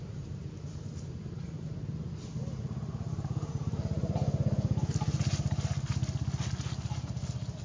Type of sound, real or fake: real